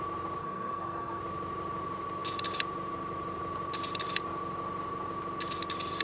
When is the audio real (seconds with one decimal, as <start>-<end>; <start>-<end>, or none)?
0.0-0.4; 1.2-6.0